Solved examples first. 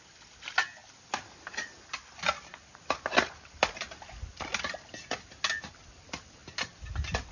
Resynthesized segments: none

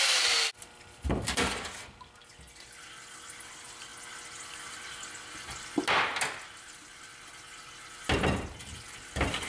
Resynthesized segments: none

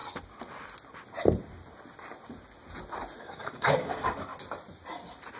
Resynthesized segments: 3.2-4.3

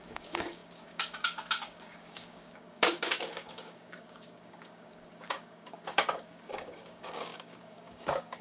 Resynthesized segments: 0.0-8.4

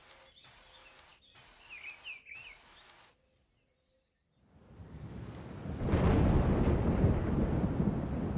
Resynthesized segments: 4.8-5.4

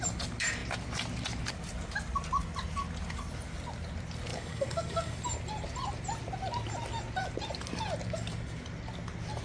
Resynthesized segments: 4.3-5.2